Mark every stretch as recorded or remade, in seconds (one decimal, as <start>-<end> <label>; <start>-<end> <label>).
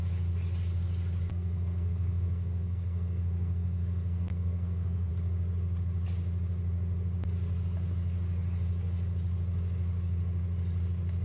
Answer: 0.0-1.3 recorded; 1.3-5.1 remade; 5.1-11.2 recorded